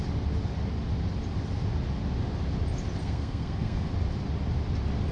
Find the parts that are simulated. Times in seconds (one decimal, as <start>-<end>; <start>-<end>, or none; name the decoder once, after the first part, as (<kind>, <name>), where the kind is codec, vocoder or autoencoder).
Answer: 3.0-3.9 (codec, SNAC)